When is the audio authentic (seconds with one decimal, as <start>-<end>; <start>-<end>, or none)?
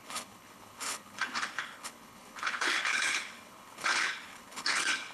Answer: none